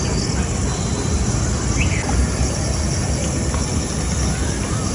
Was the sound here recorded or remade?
recorded